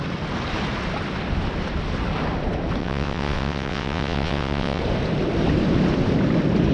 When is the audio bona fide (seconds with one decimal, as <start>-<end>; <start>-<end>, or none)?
0.0-2.8; 4.8-6.7